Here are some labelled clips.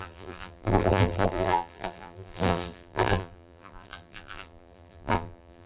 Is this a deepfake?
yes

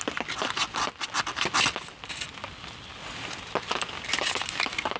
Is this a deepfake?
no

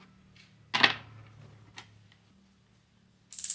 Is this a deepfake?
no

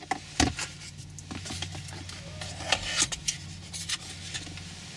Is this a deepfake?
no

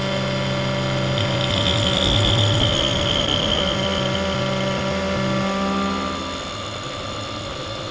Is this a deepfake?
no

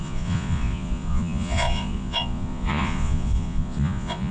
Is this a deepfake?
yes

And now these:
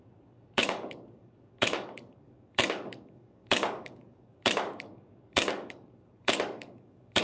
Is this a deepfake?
yes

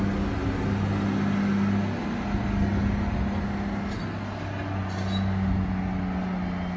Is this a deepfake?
no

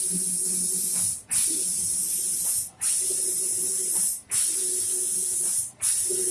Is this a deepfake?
no